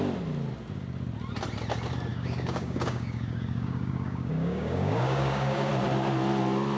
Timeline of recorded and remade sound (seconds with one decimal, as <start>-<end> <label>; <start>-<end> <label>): 0.0-2.1 recorded; 2.1-5.7 remade; 5.7-6.8 recorded